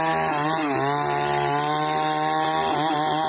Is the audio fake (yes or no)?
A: no